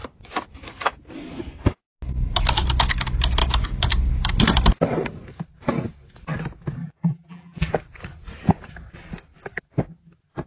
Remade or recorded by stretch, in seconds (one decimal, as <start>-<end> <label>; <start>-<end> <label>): 0.0-6.8 recorded; 6.8-7.7 remade; 7.7-10.5 recorded